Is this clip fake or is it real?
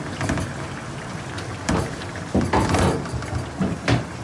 real